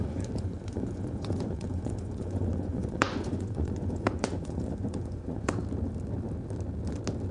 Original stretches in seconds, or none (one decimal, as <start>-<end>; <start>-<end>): 5.6-7.3